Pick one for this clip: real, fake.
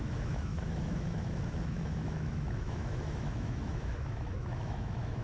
fake